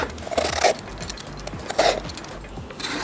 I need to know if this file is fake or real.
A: real